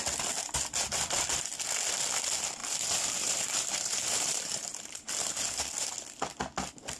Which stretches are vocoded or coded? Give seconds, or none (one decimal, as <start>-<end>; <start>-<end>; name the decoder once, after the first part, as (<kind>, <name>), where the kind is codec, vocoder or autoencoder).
2.6-5.6 (vocoder, BigVGAN v2)